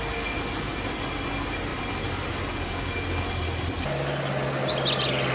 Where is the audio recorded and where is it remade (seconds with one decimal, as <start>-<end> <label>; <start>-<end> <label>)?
0.0-5.3 recorded